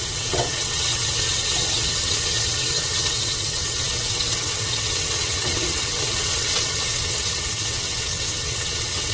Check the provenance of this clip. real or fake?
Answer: fake